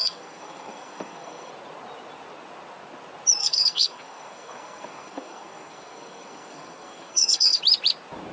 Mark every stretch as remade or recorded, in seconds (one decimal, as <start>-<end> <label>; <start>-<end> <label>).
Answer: 0.0-1.5 remade; 1.5-3.4 recorded; 3.4-7.6 remade; 7.6-8.3 recorded

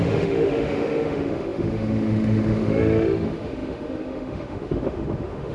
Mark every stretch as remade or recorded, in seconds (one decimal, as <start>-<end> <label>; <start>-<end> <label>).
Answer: 0.0-5.5 remade

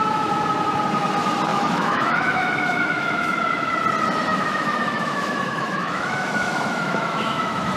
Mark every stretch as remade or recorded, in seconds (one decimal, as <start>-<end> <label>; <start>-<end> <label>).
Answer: 0.0-1.5 recorded; 1.5-3.4 remade; 3.4-4.3 recorded; 4.3-7.8 remade

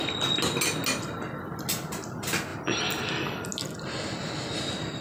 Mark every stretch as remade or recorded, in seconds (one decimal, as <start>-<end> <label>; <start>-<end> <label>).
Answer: 0.0-5.0 recorded

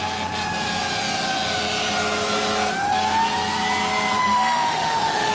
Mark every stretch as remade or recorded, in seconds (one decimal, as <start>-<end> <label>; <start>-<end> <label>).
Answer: 0.0-4.2 recorded; 4.2-5.3 remade